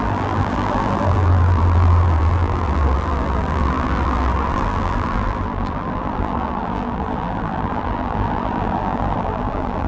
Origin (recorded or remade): remade